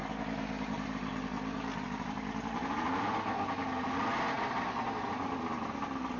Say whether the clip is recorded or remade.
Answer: recorded